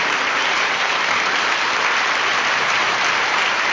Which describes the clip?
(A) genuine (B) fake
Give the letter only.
B